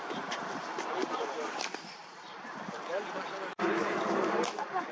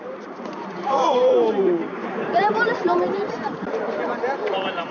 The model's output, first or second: second